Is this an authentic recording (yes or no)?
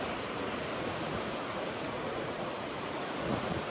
no